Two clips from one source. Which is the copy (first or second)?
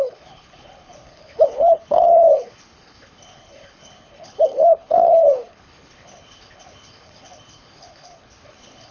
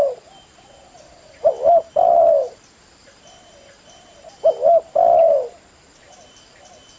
first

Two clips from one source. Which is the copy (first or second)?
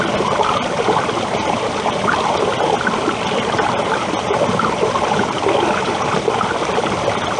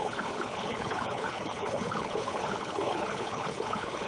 second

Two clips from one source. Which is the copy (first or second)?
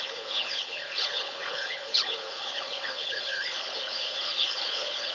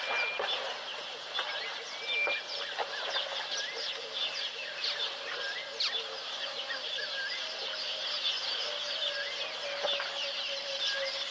first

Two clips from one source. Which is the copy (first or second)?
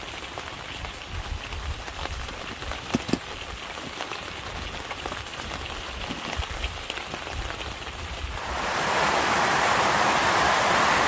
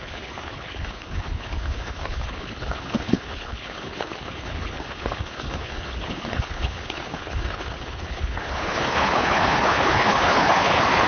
second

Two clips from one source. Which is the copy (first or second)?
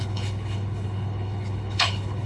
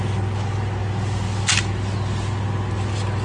first